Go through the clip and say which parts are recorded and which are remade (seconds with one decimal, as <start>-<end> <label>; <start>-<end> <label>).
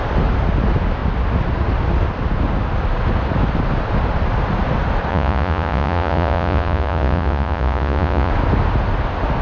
0.0-5.1 recorded; 5.1-8.3 remade; 8.3-9.4 recorded